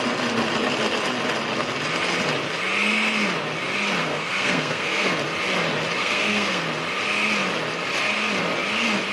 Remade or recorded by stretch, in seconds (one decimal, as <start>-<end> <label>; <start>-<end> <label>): 0.0-4.0 recorded; 4.0-5.1 remade; 5.1-6.0 recorded; 6.0-6.6 remade; 6.6-9.1 recorded